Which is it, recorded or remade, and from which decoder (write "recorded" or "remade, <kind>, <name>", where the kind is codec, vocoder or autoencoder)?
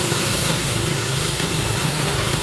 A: remade, codec, SNAC